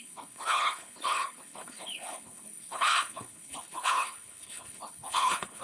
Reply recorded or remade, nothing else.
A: remade